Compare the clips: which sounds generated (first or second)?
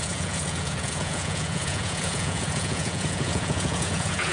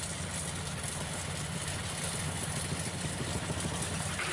first